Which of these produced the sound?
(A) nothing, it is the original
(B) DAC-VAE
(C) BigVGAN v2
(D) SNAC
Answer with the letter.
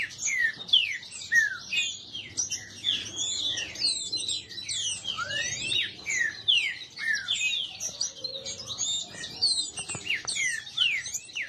A